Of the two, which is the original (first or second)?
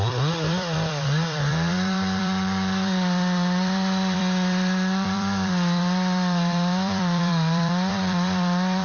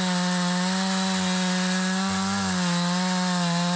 second